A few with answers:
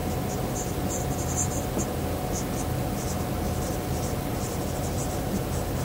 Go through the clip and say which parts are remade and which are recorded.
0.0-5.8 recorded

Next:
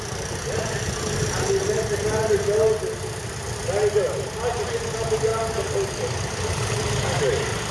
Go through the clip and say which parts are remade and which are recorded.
0.0-7.7 recorded

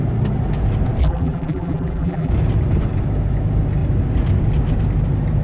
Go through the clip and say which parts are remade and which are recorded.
0.0-1.0 recorded; 1.0-2.3 remade; 2.3-5.4 recorded

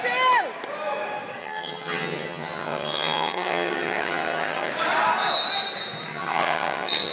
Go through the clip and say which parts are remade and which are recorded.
0.0-1.4 recorded; 1.4-4.7 remade; 4.7-6.1 recorded; 6.1-7.1 remade

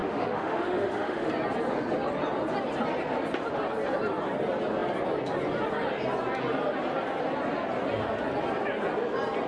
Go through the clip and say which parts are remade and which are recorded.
0.0-1.3 remade; 1.3-9.5 recorded

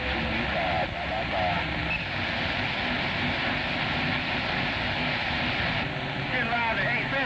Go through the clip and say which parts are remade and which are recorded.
0.0-7.3 recorded